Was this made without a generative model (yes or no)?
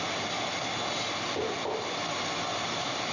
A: yes